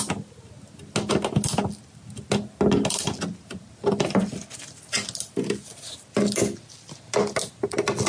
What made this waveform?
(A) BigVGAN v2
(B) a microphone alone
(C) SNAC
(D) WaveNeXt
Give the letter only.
B